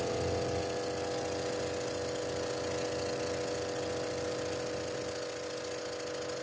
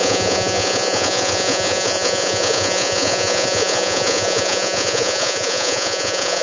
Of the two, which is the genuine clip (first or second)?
first